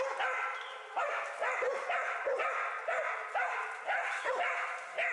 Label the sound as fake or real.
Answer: real